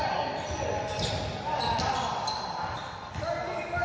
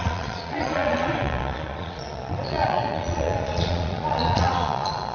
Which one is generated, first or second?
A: second